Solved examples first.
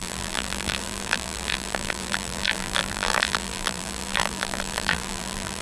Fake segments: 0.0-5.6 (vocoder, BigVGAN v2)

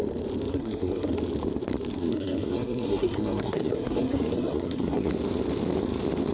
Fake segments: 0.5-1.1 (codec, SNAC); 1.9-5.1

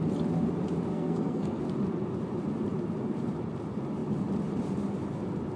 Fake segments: 0.9-1.6 (codec, SNAC)

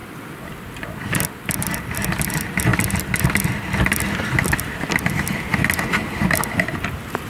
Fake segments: 0.0-0.6 (vocoder, BigVGAN v2)

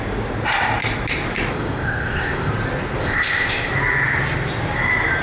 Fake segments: 1.5-2.5 (codec, ZipCodec); 3.0-3.7